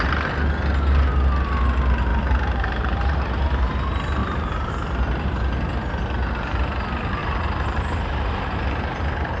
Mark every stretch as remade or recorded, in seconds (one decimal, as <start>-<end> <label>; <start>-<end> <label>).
0.0-2.1 recorded; 2.1-3.7 remade; 3.7-4.2 recorded; 4.2-4.7 remade; 4.7-7.2 recorded; 7.2-9.4 remade